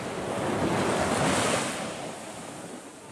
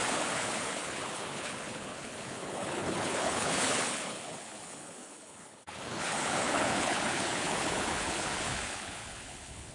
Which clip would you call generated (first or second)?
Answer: second